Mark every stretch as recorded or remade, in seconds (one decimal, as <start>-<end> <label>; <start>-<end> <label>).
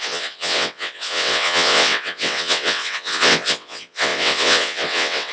0.0-5.3 remade